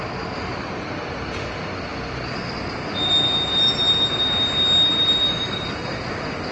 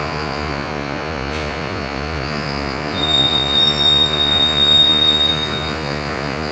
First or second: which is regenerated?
second